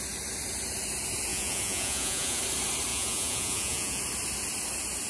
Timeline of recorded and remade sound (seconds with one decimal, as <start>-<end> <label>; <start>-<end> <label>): 0.0-1.3 recorded; 1.3-2.4 remade; 2.4-2.9 recorded; 2.9-4.0 remade; 4.0-5.1 recorded